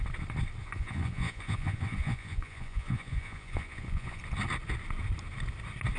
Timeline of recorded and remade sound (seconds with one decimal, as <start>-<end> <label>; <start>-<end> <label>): 0.0-0.6 recorded; 0.6-4.2 remade; 4.2-6.0 recorded